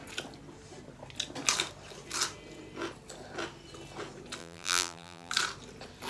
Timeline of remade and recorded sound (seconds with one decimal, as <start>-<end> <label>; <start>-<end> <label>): 0.0-4.4 recorded; 4.4-5.3 remade; 5.3-6.1 recorded